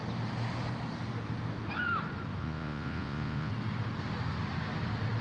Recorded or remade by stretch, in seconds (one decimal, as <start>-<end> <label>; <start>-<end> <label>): 0.0-2.4 recorded; 2.4-3.5 remade; 3.5-5.2 recorded